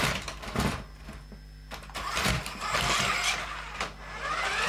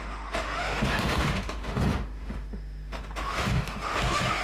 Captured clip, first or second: first